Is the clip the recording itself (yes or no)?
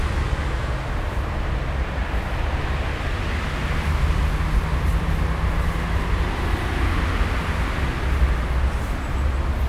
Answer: yes